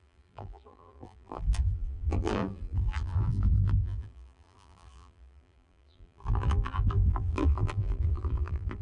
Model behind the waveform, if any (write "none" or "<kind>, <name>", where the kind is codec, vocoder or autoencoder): vocoder, BigVGAN v2